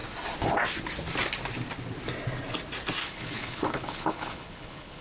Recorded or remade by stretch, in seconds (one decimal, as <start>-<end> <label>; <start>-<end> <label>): 0.0-3.0 recorded; 3.0-5.0 remade